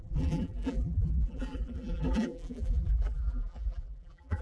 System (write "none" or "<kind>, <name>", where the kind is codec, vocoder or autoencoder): vocoder, BigVGAN v2